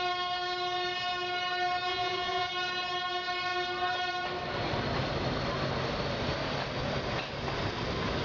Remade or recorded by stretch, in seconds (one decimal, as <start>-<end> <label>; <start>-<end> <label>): 0.0-1.9 recorded; 1.9-2.5 remade; 2.5-8.2 recorded